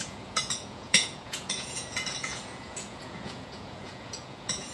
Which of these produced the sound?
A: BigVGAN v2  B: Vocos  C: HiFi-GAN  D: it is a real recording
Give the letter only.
B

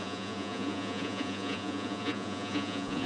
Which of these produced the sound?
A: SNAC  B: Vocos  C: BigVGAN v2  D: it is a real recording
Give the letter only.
B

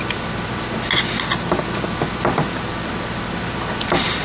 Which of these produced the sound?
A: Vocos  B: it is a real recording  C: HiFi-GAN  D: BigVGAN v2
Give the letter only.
B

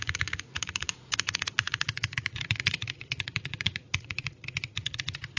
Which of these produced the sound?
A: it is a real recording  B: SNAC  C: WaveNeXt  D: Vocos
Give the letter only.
D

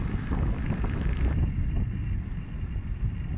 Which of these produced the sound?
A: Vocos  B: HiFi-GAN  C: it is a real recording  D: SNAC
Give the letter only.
C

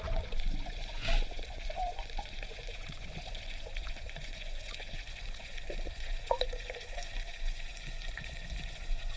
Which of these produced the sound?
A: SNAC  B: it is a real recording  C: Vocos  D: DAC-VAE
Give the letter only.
C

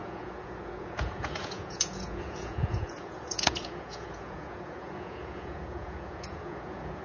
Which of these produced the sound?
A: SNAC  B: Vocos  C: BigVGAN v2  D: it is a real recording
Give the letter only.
B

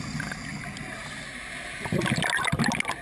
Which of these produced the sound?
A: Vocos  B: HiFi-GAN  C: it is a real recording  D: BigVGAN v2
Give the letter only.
C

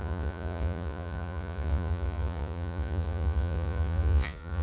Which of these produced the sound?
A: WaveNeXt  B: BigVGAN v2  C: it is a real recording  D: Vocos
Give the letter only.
D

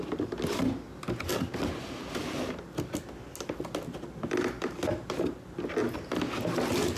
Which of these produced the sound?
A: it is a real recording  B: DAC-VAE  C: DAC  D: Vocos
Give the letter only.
A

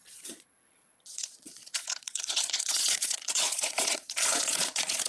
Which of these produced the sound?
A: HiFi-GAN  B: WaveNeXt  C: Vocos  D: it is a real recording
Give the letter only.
C